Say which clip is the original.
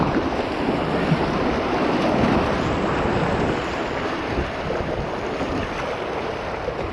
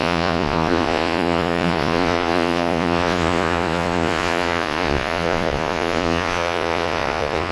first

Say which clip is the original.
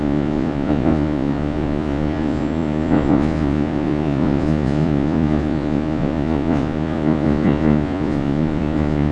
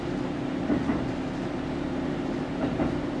second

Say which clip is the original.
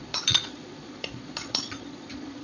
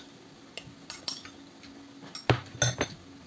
second